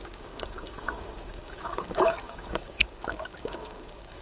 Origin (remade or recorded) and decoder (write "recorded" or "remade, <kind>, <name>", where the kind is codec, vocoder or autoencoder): remade, codec, DAC